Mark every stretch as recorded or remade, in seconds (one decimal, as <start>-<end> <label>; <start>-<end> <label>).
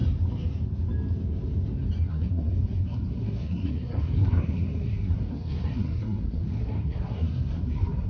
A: 0.0-2.1 recorded; 2.1-8.1 remade